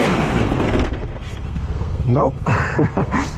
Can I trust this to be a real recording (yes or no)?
no